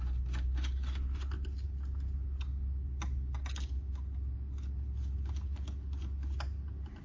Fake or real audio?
real